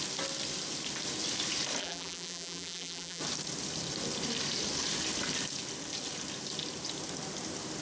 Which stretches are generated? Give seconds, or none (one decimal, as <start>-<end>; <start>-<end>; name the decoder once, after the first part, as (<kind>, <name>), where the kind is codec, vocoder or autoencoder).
1.8-3.2 (vocoder, BigVGAN v2)